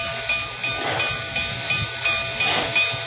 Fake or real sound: real